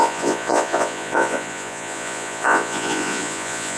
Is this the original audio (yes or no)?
no